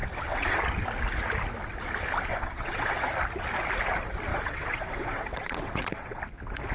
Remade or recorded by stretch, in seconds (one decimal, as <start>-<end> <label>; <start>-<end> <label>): 0.0-0.6 remade; 0.6-2.3 recorded; 2.3-3.1 remade; 3.1-4.3 recorded; 4.3-6.2 remade; 6.2-6.7 recorded